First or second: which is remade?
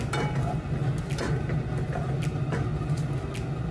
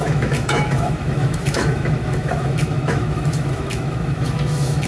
second